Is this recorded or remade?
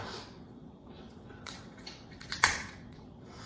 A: remade